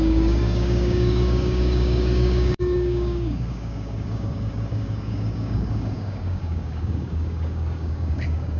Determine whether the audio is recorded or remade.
remade